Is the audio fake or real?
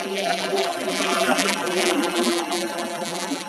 fake